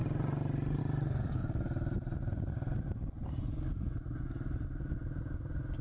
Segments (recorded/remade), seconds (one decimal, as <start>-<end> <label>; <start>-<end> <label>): 0.0-1.4 recorded; 1.4-4.9 remade; 4.9-5.8 recorded